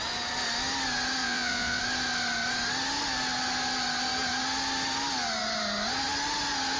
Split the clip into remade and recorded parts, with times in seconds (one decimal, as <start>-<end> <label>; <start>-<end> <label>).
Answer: 0.0-1.2 recorded; 1.2-1.8 remade; 1.8-6.8 recorded

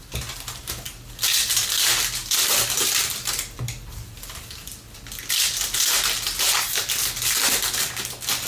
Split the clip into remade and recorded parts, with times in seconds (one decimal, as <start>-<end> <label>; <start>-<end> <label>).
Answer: 0.0-2.2 recorded; 2.2-5.8 remade; 5.8-8.5 recorded

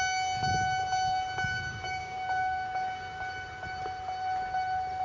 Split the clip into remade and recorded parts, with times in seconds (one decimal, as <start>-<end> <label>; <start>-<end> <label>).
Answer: 0.0-0.8 recorded; 0.8-3.3 remade; 3.3-5.0 recorded

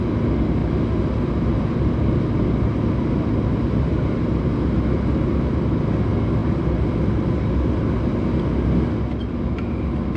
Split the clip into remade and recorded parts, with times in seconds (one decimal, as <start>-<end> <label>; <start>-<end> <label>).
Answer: 0.0-10.2 recorded